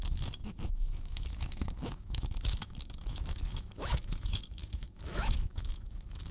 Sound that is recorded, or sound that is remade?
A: remade